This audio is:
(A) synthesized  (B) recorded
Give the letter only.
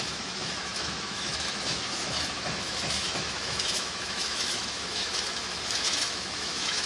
A